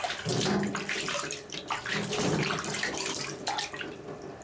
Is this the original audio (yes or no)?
yes